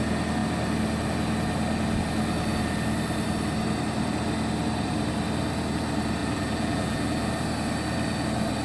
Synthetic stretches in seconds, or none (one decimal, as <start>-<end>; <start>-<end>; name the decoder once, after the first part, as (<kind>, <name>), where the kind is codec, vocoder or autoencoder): 6.2-7.3 (vocoder, BigVGAN v2)